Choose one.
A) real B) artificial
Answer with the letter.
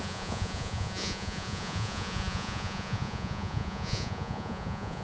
B